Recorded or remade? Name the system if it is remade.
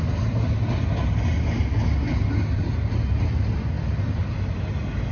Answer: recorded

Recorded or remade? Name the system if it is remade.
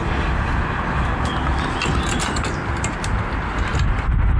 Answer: recorded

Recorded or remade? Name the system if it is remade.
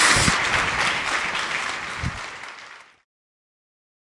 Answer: recorded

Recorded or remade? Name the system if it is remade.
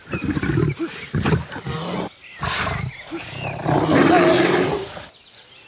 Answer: remade, vocoder, BigVGAN v2